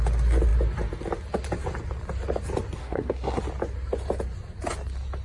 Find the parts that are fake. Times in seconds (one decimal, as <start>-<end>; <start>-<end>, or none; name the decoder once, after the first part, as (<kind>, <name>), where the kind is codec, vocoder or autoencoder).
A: 2.8-3.4 (codec, SNAC)